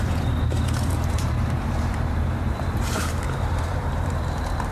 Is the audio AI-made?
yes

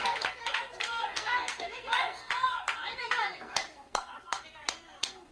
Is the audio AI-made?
yes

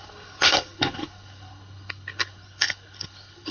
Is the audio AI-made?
yes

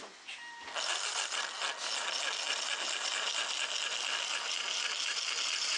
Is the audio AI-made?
no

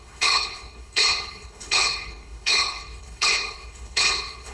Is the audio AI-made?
yes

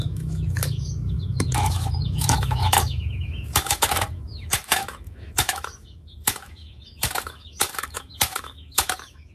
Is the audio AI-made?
yes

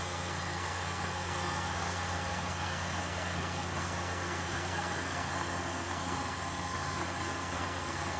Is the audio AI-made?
yes